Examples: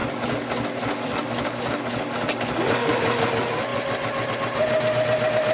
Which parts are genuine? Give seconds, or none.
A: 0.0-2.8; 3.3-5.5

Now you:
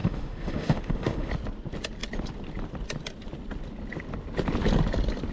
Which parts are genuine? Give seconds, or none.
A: 1.3-5.3

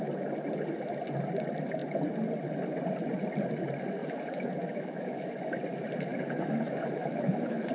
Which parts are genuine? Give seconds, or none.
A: 0.0-4.0; 5.4-6.1

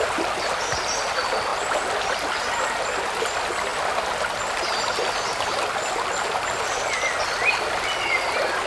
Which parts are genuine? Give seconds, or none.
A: 0.0-8.7

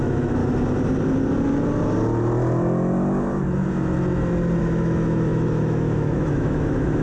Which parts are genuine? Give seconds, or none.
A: 0.4-4.6

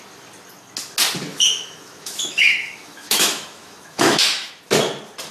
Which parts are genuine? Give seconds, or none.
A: 0.0-1.3; 4.5-5.3

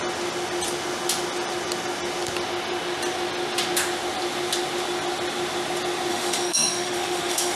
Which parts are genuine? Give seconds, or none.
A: 0.0-6.1

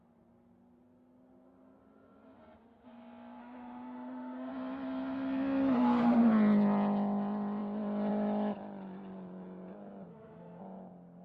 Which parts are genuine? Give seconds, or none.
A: 0.0-3.4; 4.5-10.1; 10.6-11.2